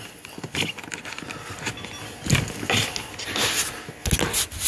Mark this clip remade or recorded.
recorded